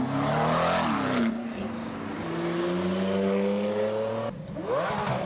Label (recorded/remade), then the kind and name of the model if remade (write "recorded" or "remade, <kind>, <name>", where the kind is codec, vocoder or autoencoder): recorded